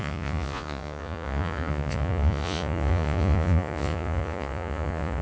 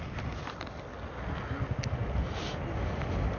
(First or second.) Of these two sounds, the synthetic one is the first